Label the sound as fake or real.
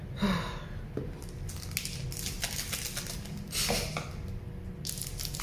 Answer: real